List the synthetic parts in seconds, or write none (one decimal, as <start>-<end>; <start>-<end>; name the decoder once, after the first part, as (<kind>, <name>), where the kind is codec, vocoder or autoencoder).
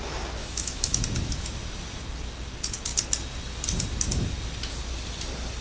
0.4-1.0 (autoencoder, DAC-VAE)